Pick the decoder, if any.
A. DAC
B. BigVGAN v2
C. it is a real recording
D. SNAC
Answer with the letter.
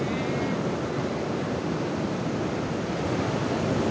C